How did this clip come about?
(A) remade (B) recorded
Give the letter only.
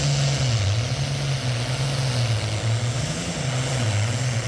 B